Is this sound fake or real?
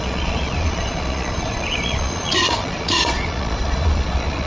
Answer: fake